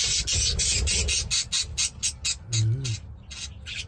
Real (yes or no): yes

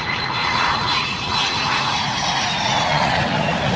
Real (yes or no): no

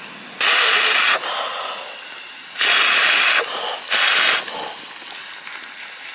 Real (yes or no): yes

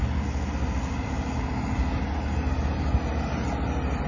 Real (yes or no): yes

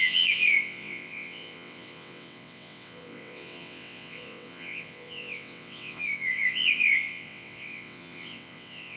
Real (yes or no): no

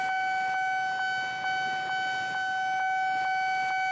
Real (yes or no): yes